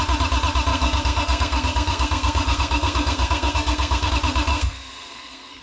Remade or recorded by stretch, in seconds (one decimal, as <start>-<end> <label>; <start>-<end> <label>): 0.0-0.7 recorded; 0.7-4.1 remade; 4.1-4.5 recorded; 4.5-5.6 remade

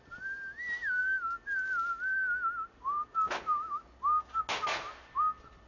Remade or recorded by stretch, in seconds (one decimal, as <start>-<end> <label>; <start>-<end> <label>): 0.0-5.7 recorded

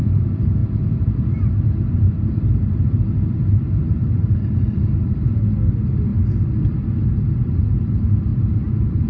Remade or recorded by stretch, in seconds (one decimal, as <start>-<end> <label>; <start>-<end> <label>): 0.0-9.1 recorded